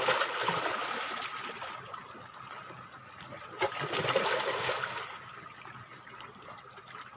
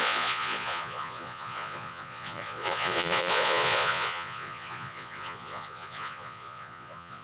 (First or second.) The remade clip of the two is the second